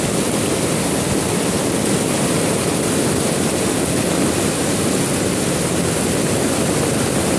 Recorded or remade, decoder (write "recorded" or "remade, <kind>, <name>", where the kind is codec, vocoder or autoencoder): recorded